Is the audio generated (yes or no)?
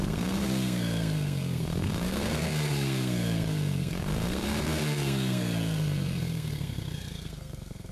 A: yes